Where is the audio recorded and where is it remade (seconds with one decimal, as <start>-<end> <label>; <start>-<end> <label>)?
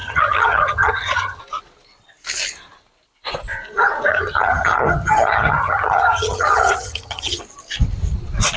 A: 0.0-1.4 remade; 1.4-4.1 recorded; 4.1-7.4 remade; 7.4-8.6 recorded